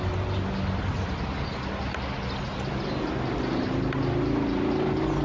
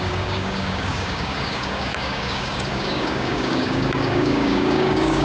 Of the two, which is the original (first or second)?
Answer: first